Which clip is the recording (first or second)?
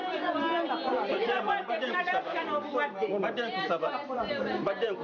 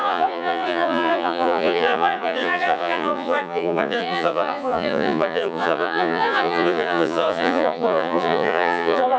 first